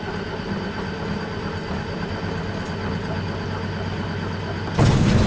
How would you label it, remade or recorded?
recorded